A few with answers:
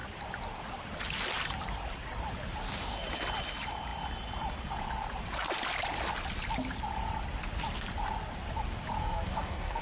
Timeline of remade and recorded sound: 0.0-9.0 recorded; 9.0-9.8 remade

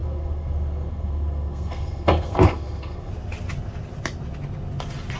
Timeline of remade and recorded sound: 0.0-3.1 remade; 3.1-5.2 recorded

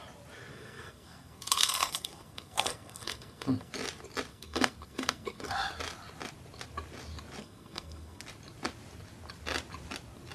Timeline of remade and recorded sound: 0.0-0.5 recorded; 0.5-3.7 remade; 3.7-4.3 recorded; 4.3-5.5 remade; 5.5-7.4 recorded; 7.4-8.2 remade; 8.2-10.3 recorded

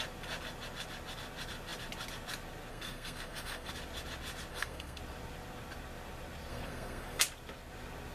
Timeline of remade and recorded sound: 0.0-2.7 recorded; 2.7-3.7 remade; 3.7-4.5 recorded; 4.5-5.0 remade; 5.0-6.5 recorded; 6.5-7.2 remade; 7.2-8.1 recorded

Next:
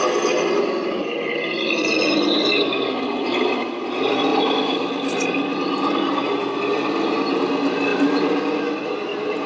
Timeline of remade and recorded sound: 0.0-9.5 recorded

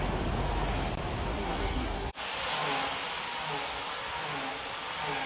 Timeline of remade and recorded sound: 0.0-1.3 recorded; 1.3-2.1 remade; 2.1-5.3 recorded